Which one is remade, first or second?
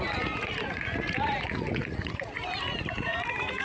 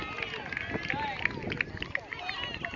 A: first